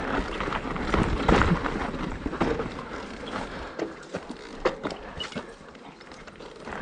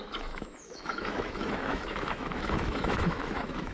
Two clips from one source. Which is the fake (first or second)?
second